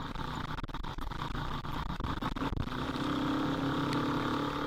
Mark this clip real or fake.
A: real